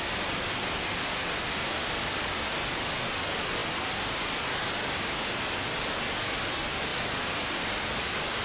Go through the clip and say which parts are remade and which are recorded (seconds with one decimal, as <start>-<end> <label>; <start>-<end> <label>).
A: 0.0-8.4 recorded